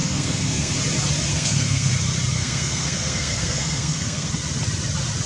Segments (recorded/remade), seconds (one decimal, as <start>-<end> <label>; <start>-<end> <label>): 0.0-0.7 remade; 0.7-1.3 recorded; 1.3-1.9 remade; 1.9-2.3 recorded; 2.3-4.3 remade; 4.3-5.3 recorded

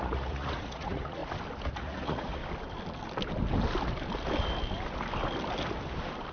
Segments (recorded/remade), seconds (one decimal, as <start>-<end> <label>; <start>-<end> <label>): 0.0-1.2 remade; 1.2-1.7 recorded; 1.7-2.4 remade; 2.4-6.3 recorded

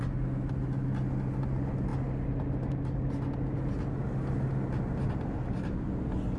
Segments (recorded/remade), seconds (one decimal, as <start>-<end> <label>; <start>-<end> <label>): 0.0-6.4 recorded

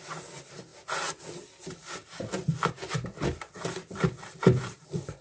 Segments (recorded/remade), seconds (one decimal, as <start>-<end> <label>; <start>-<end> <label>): 0.0-2.0 recorded; 2.0-5.2 remade

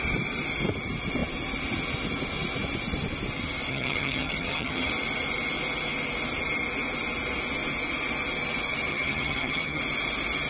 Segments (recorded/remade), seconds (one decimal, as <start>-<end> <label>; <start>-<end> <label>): 0.0-3.7 recorded; 3.7-4.9 remade; 4.9-8.9 recorded; 8.9-9.8 remade; 9.8-10.5 recorded

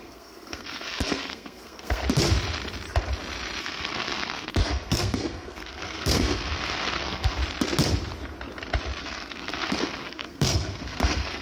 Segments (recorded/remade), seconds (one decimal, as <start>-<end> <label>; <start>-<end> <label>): 0.0-2.0 remade; 2.0-3.6 recorded; 3.6-7.4 remade; 7.4-9.0 recorded; 9.0-11.4 remade